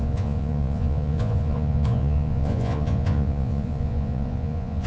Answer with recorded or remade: remade